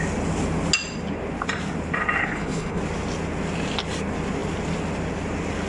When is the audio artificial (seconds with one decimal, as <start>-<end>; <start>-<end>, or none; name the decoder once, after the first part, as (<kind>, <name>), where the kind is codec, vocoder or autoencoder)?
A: 2.2-2.8 (codec, HILCodec)